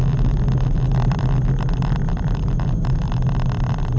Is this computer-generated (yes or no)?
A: no